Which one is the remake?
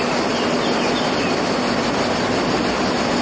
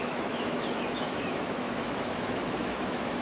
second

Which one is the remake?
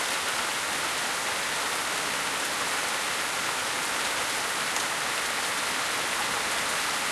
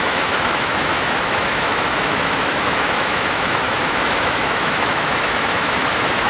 second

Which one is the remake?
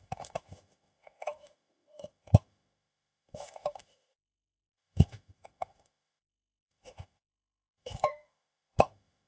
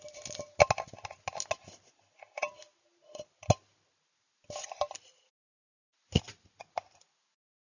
first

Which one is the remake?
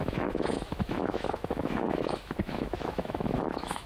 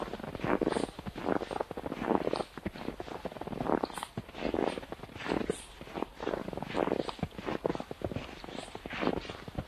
first